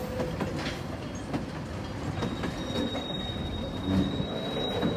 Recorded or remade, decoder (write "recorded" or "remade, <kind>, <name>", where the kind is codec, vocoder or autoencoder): recorded